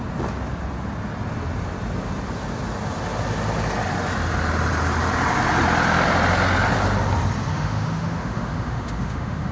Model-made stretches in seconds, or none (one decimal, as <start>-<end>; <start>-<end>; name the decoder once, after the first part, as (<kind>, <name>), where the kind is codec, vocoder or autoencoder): 7.5-9.5 (autoencoder, DAC-VAE)